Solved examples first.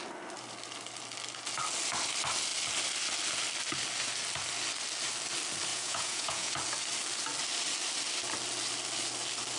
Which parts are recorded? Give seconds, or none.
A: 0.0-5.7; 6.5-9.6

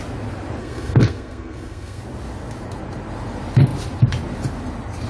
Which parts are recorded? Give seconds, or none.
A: 0.0-0.6; 2.0-5.1

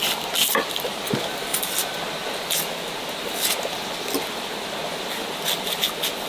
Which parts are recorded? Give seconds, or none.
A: 0.0-6.3